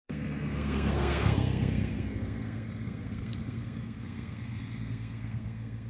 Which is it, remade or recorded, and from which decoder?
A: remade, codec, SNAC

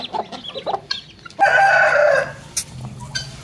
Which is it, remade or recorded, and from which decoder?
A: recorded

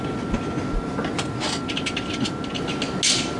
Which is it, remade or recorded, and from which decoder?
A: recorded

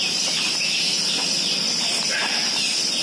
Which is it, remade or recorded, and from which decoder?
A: recorded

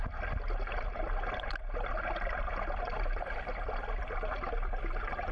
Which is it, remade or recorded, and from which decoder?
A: remade, vocoder, BigVGAN v2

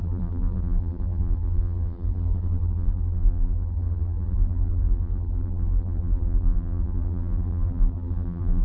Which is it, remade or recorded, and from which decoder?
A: remade, vocoder, BigVGAN v2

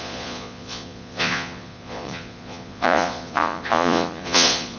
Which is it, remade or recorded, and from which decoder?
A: remade, vocoder, Vocos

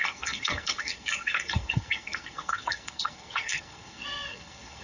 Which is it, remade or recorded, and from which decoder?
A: remade, codec, SNAC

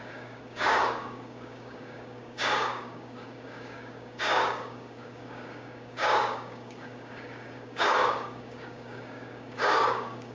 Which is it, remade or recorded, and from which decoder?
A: remade, codec, DAC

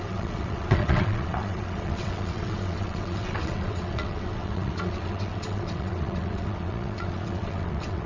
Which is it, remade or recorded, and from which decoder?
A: remade, vocoder, WaveNeXt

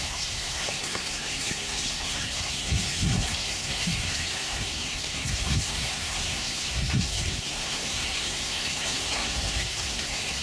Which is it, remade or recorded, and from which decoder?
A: remade, codec, SNAC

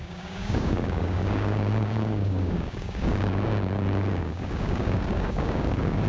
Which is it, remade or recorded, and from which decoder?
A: remade, codec, DAC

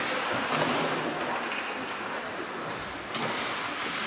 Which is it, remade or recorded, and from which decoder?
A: recorded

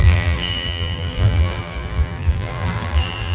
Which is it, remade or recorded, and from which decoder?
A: remade, vocoder, BigVGAN v2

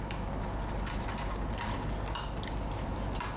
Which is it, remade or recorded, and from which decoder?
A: recorded